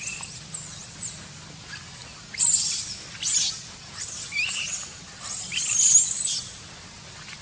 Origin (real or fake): real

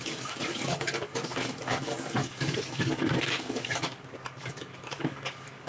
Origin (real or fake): fake